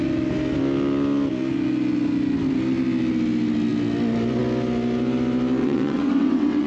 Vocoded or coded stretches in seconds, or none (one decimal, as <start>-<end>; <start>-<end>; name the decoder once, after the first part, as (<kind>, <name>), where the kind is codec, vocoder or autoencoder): 5.6-6.7 (vocoder, WaveNeXt)

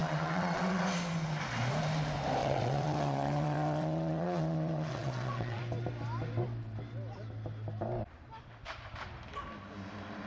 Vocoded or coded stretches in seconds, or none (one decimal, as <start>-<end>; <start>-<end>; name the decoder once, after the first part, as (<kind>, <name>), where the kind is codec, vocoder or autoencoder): 0.0-0.8 (vocoder, WaveNeXt); 2.4-5.6

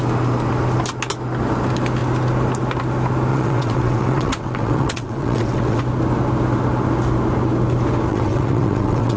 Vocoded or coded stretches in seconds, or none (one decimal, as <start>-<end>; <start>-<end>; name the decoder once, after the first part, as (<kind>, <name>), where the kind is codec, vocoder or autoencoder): 3.3-5.8 (vocoder, WaveNeXt); 8.1-9.2

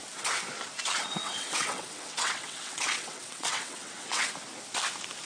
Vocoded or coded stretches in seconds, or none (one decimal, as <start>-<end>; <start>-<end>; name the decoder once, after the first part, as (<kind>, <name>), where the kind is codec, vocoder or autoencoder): 1.2-4.3 (vocoder, WaveNeXt)

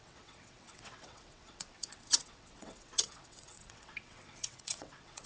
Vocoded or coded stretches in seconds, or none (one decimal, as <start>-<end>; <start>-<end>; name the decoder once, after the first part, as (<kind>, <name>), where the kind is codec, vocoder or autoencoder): 0.0-5.3 (vocoder, WaveNeXt)

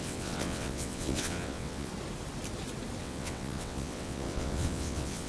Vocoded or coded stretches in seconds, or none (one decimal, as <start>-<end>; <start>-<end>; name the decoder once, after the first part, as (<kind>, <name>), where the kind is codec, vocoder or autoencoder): 0.0-1.9 (vocoder, WaveNeXt); 3.0-5.3